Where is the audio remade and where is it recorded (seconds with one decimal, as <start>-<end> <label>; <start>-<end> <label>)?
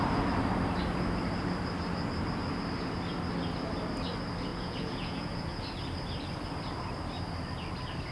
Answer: 0.0-4.5 recorded; 4.5-5.6 remade; 5.6-8.1 recorded